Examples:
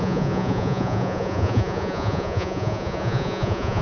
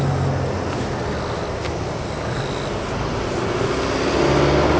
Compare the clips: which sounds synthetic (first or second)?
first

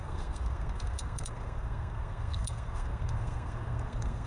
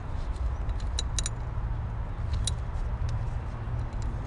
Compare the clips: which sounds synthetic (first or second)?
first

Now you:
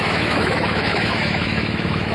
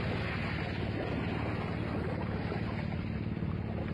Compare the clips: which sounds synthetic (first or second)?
first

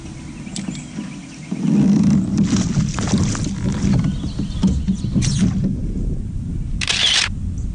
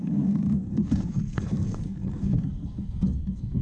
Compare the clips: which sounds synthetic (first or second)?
second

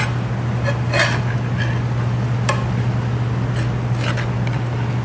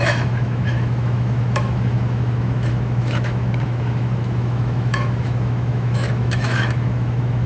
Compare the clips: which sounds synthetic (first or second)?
second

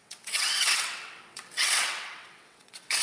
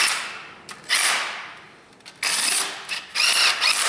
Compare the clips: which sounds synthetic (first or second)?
first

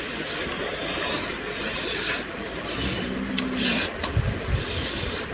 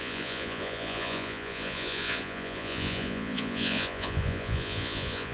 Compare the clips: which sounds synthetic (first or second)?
second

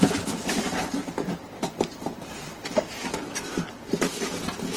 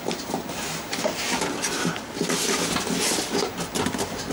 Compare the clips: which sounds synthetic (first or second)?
first